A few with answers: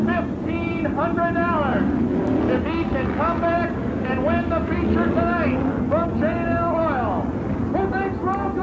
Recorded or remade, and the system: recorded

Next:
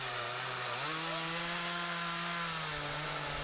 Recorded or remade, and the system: recorded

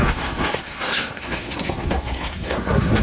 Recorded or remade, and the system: remade, codec, SNAC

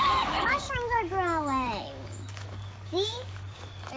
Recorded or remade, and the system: remade, codec, DAC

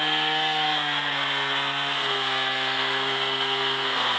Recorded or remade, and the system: remade, codec, SNAC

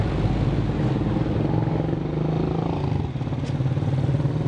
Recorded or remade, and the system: recorded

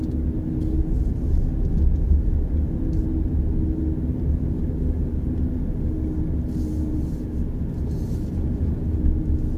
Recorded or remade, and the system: recorded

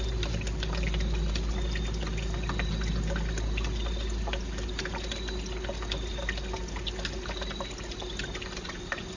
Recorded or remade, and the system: recorded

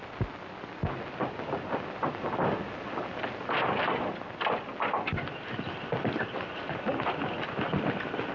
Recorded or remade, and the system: recorded